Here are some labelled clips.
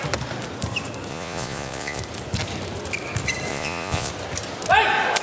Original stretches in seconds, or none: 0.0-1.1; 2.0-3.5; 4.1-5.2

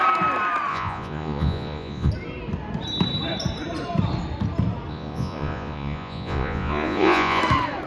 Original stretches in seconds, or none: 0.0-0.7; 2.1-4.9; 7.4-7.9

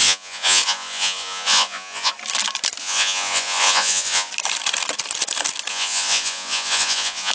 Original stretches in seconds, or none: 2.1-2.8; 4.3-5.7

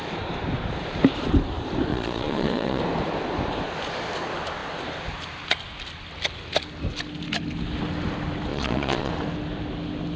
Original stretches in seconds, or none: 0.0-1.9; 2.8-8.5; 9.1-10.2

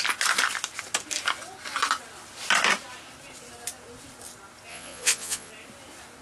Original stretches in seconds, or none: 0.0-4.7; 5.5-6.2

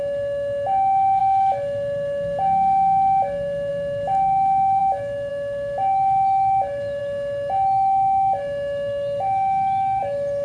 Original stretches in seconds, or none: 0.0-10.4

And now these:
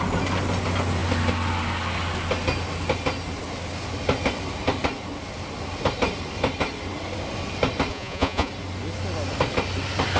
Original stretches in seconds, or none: 0.0-7.9; 8.5-10.2

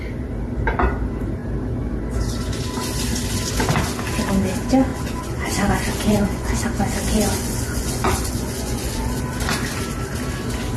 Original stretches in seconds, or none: 0.0-4.9; 9.2-10.8